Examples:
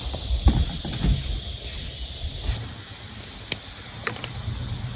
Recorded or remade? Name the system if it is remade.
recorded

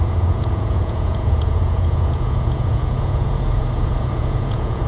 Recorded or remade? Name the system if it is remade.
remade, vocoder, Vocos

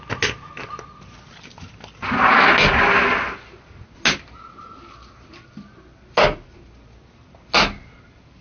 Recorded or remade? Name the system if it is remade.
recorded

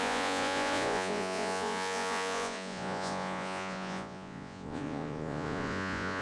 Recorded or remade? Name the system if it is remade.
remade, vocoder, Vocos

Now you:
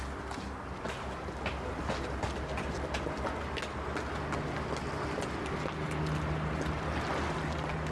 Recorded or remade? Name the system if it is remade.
recorded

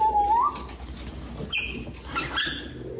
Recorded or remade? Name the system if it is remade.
recorded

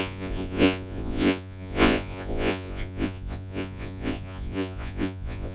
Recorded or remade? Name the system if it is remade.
remade, vocoder, Vocos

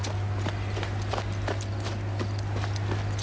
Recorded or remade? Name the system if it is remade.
recorded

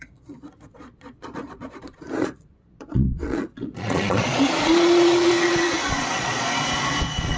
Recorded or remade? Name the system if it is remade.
remade, vocoder, Vocos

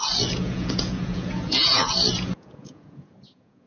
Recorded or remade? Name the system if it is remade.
remade, vocoder, Vocos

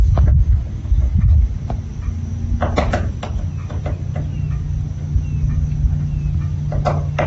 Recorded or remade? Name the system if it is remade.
recorded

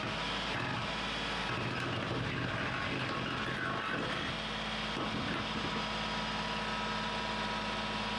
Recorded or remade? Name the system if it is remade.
recorded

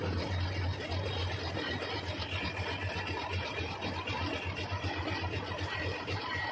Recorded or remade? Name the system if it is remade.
recorded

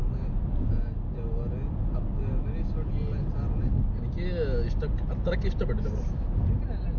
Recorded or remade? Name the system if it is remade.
recorded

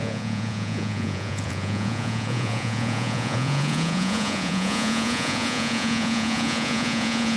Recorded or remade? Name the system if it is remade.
remade, vocoder, Vocos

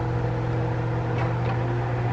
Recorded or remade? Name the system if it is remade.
recorded